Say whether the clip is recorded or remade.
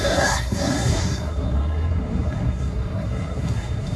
remade